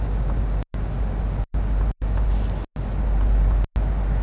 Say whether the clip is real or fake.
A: real